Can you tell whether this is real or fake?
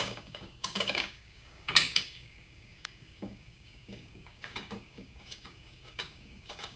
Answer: fake